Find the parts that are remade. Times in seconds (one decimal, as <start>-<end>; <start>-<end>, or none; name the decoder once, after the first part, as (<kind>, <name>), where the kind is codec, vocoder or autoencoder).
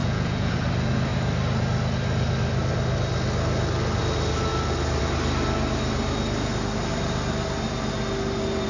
0.0-0.5 (vocoder, Vocos)